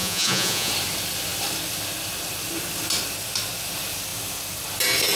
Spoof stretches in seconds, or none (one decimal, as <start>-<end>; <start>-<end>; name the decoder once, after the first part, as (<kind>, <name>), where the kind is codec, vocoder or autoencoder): 0.0-0.7 (vocoder, Vocos)